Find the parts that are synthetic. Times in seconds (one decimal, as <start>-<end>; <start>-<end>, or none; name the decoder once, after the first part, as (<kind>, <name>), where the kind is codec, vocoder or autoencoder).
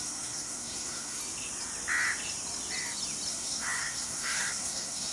0.0-1.2 (codec, SNAC); 3.3-5.1